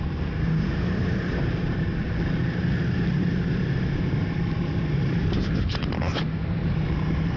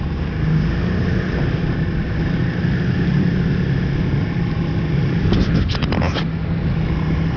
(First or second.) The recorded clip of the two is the second